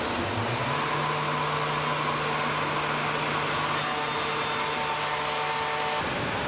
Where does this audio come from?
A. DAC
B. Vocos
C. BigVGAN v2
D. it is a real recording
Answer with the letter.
D